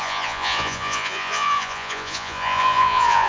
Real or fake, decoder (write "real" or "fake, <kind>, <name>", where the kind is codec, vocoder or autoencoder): fake, vocoder, Vocos